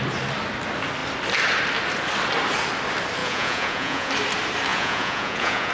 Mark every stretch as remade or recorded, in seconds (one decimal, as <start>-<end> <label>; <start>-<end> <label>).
0.0-3.2 recorded; 3.2-4.1 remade; 4.1-4.7 recorded; 4.7-5.7 remade